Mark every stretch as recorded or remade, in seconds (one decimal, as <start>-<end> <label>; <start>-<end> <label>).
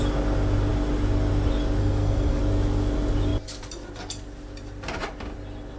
0.0-1.8 recorded; 1.8-2.4 remade; 2.4-5.8 recorded